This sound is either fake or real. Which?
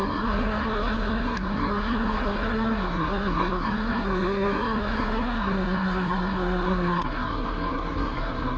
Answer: fake